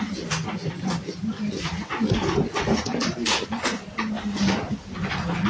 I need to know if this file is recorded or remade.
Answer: recorded